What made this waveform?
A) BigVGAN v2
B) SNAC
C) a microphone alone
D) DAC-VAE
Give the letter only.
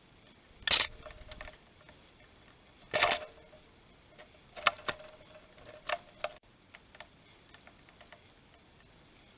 C